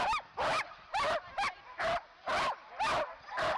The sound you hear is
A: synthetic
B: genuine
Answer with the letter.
B